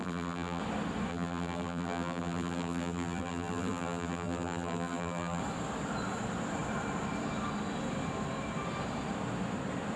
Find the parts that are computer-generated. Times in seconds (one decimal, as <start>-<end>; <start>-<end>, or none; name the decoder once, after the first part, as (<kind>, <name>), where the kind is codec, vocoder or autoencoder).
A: 0.0-0.6 (vocoder, BigVGAN v2); 1.1-5.4